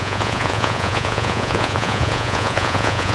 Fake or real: fake